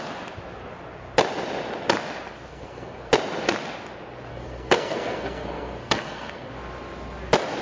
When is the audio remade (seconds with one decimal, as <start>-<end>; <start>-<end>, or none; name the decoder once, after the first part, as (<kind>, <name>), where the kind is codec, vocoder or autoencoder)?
2.5-3.1 (codec, SNAC); 4.3-6.5